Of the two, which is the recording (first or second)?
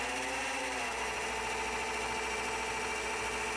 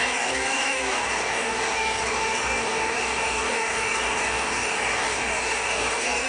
first